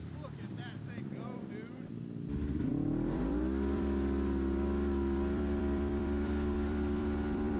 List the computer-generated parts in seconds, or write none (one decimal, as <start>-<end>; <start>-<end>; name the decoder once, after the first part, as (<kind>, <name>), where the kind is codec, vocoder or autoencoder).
0.0-1.0 (vocoder, BigVGAN v2); 2.7-7.6